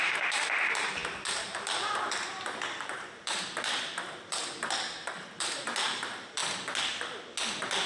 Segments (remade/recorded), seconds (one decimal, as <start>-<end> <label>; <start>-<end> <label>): 0.0-6.4 remade; 6.4-7.5 recorded; 7.5-7.9 remade